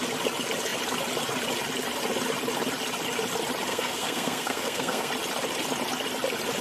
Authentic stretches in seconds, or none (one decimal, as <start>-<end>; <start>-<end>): 0.0-3.7; 5.1-6.6